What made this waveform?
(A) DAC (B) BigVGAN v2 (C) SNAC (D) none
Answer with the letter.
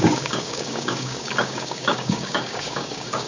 A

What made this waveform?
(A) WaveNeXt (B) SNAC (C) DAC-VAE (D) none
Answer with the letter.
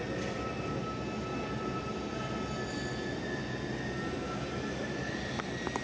D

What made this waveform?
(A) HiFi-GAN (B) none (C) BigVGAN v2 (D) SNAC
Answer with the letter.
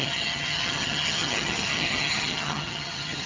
A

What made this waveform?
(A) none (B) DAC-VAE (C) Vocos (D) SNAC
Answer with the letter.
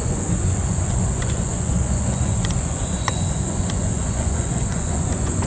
C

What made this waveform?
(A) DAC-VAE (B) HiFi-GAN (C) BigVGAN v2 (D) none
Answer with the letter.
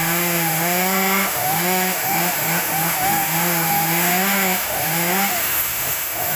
A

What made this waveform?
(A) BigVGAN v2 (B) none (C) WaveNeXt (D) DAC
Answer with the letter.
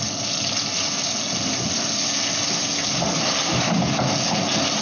B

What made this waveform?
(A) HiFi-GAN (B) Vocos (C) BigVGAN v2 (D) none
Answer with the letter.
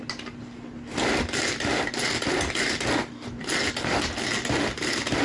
D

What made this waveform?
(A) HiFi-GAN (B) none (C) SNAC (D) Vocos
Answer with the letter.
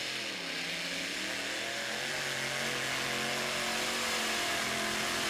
B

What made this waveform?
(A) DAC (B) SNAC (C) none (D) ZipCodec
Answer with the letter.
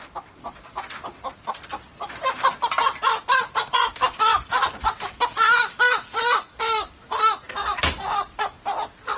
C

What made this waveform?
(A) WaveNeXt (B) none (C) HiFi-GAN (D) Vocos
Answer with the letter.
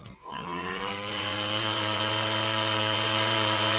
A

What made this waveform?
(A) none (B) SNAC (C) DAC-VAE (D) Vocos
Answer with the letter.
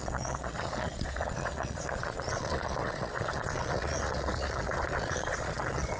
D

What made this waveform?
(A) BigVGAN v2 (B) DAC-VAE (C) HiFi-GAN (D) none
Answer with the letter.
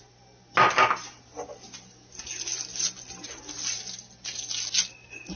D